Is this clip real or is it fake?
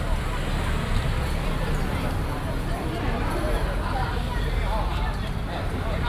real